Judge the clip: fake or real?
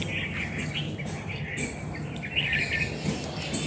real